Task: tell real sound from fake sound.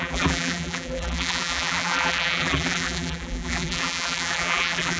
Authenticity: fake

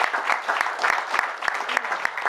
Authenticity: real